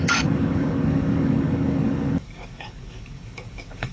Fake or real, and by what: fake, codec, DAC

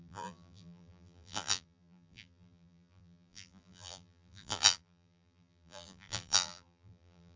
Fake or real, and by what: fake, vocoder, BigVGAN v2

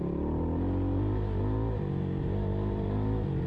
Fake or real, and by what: real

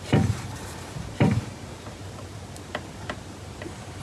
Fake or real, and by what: fake, vocoder, BigVGAN v2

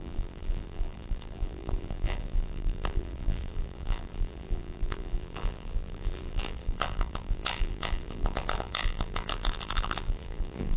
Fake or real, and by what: fake, vocoder, BigVGAN v2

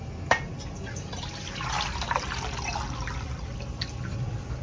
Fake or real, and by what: real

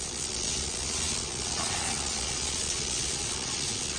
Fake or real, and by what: fake, vocoder, Vocos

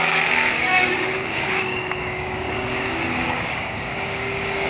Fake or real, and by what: fake, codec, DAC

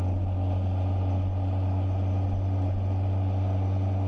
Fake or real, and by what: real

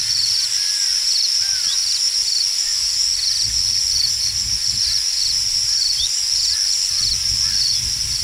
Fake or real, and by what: real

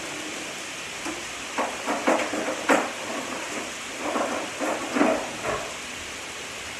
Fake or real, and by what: real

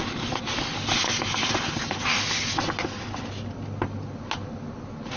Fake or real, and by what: real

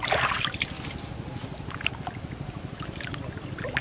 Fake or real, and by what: real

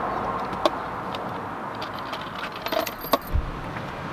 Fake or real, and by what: real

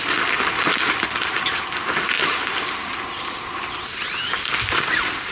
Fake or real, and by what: real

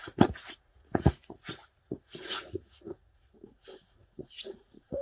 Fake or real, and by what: fake, vocoder, Vocos